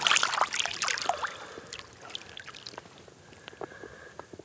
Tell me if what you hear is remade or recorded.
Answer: recorded